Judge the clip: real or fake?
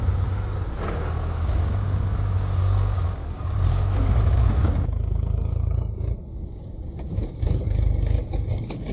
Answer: fake